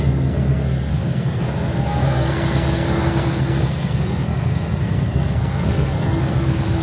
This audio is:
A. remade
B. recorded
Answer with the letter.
A